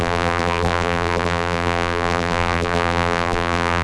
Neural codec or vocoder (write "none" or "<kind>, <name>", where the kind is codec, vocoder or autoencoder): vocoder, BigVGAN v2